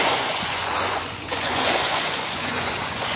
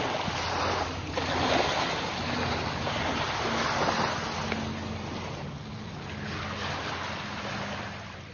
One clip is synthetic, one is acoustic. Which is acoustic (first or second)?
second